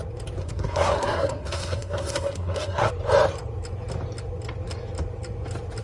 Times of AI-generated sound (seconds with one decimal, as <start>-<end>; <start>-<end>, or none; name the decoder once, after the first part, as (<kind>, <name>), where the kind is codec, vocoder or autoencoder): 0.4-2.9 (codec, SNAC)